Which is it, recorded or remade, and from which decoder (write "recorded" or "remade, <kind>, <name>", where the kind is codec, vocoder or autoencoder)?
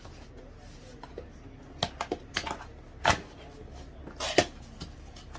recorded